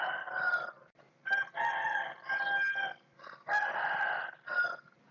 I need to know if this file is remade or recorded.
recorded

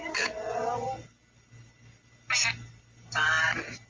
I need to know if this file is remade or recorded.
recorded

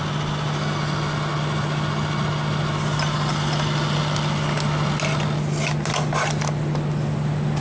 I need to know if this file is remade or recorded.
recorded